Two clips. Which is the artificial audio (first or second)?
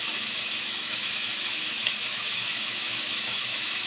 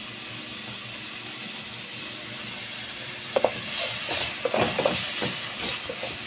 first